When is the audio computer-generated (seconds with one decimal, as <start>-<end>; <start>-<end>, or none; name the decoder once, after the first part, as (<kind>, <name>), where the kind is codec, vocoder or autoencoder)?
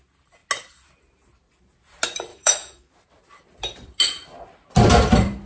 2.3-2.9 (autoencoder, DAC-VAE)